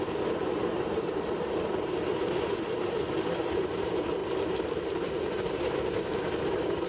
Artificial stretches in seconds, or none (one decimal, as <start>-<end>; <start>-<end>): 0.0-6.9